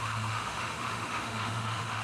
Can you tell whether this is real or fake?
fake